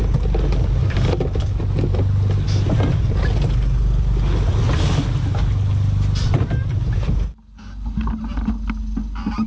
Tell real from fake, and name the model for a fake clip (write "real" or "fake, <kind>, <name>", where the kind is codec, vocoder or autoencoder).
real